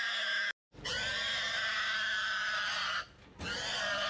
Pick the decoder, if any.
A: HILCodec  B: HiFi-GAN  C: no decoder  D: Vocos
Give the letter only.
C